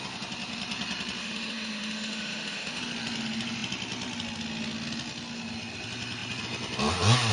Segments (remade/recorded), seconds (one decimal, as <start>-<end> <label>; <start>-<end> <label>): 0.0-1.2 recorded; 1.2-2.8 remade; 2.8-7.3 recorded